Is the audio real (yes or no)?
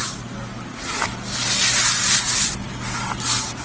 yes